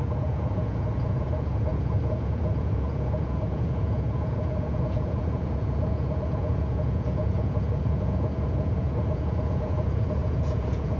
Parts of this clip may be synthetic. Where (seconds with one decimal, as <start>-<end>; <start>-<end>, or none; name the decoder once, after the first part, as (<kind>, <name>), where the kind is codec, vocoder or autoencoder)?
0.0-11.0 (vocoder, Vocos)